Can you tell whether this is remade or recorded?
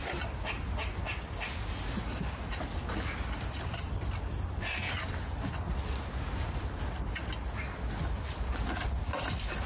recorded